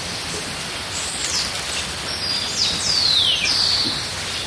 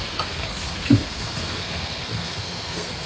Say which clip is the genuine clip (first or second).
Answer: first